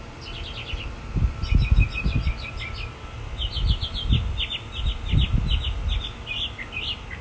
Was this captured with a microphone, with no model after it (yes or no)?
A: yes